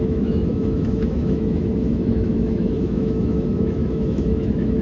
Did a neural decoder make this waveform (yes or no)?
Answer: yes